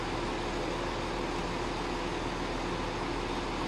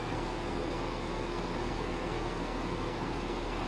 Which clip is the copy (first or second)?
second